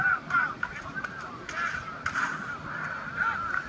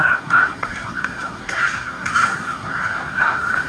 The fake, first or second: second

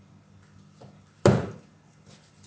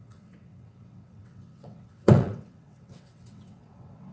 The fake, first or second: second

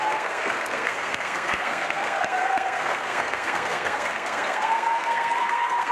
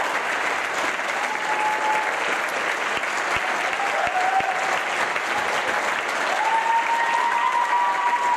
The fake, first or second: first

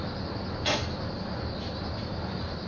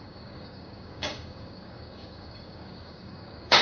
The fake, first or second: second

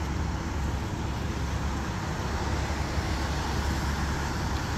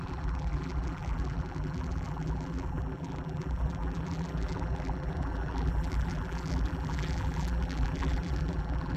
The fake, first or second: second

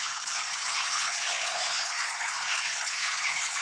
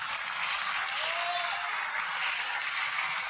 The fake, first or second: first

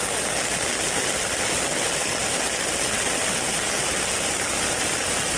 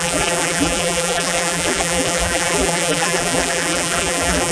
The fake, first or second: second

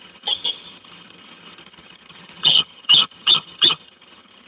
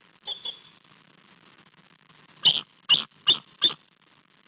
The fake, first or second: first